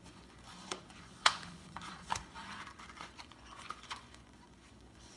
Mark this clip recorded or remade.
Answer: remade